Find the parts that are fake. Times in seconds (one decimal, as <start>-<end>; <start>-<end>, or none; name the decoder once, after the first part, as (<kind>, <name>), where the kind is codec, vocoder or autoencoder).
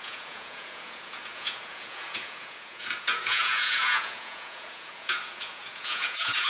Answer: 0.0-6.5 (vocoder, Vocos)